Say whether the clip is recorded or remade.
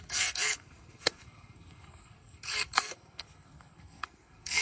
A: remade